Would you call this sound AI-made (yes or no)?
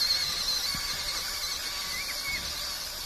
no